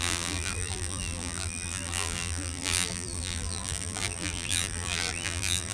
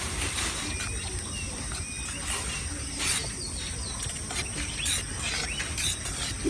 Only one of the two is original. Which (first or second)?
second